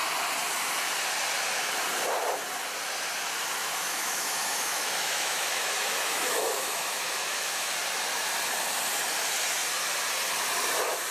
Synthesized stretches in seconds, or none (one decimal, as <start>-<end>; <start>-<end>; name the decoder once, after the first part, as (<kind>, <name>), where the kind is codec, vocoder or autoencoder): 3.6-7.7 (autoencoder, DAC-VAE)